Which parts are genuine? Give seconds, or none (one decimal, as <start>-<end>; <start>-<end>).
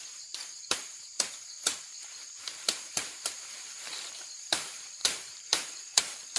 none